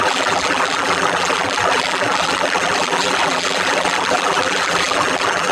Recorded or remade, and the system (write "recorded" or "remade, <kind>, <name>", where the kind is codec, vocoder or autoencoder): remade, vocoder, BigVGAN v2